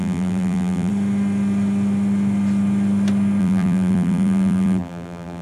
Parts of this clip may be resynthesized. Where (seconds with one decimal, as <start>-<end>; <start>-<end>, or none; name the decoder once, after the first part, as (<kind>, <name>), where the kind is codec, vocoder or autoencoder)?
0.0-0.9 (vocoder, BigVGAN v2); 3.4-5.4